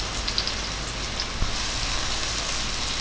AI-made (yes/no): no